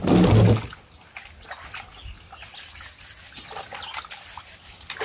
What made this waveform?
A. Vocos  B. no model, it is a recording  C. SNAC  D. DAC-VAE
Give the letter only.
B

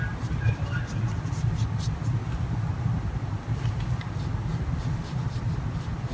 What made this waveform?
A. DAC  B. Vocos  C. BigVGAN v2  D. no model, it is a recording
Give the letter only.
D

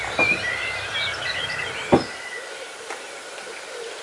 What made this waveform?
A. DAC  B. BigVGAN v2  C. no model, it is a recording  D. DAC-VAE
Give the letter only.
C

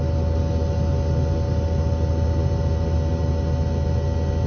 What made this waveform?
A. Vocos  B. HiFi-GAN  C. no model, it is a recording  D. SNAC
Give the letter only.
C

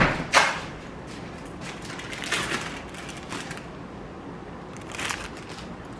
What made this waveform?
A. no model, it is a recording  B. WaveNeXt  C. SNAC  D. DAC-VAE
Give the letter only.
A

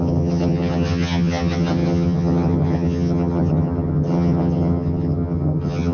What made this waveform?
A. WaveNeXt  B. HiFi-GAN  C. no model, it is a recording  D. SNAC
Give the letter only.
B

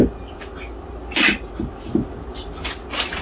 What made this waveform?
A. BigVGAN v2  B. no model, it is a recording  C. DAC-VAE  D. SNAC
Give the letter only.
B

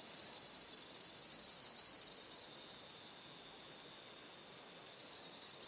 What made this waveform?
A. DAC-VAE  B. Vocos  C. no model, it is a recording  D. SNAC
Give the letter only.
C